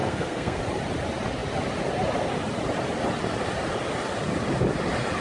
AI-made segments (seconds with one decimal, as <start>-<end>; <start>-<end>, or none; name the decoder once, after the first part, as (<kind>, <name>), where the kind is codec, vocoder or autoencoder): 0.0-0.6 (codec, SNAC)